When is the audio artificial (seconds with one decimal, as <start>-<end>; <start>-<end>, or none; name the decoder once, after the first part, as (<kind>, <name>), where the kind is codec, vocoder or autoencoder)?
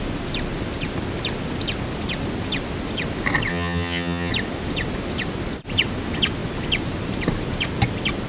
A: 3.5-4.3 (vocoder, HiFi-GAN)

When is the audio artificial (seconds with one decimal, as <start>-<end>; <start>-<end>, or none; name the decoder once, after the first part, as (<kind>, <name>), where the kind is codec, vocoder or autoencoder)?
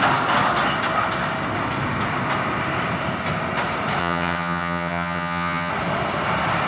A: 4.0-5.7 (vocoder, HiFi-GAN)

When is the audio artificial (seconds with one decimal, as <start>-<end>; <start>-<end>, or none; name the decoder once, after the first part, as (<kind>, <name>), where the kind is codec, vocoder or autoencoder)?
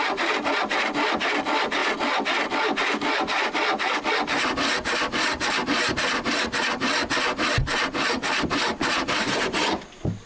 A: none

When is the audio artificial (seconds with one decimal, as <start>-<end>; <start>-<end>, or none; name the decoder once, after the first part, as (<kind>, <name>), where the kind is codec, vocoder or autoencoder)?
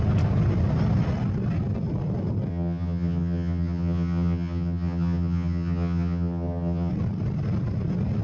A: 2.5-6.9 (vocoder, HiFi-GAN)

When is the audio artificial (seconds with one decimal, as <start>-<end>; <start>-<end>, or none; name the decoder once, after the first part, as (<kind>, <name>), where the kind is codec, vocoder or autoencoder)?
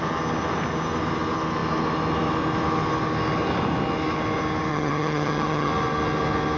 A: 4.7-5.7 (vocoder, HiFi-GAN)